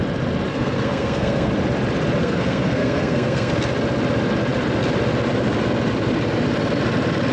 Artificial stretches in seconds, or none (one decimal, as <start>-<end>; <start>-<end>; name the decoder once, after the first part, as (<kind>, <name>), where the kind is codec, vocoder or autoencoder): 0.5-1.5 (codec, SNAC); 2.2-3.5

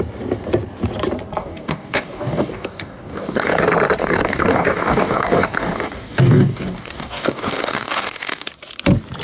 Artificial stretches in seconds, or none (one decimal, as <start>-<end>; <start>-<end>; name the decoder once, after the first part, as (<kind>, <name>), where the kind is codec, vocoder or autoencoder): 1.4-3.6 (codec, DAC); 4.0-8.5